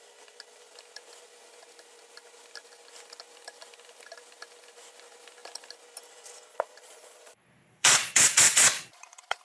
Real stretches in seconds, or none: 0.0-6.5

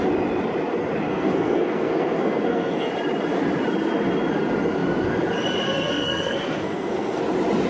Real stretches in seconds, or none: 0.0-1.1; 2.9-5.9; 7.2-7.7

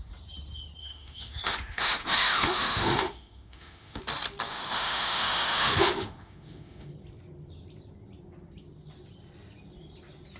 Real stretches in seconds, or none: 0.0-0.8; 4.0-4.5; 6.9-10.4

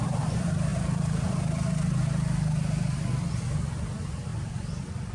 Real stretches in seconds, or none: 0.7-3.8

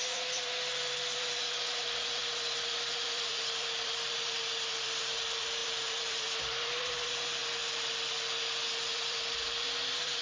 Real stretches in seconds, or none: 7.4-8.9

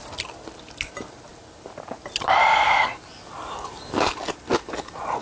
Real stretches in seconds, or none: 0.0-5.2